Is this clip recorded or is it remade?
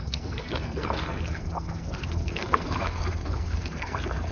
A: remade